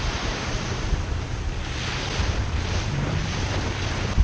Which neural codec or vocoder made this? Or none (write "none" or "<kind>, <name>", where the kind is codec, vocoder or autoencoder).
vocoder, BigVGAN v2